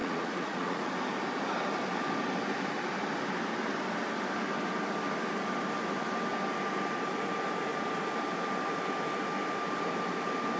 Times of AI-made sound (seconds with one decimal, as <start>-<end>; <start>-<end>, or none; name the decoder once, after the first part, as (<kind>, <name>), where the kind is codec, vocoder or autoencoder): 0.0-0.9 (vocoder, Vocos)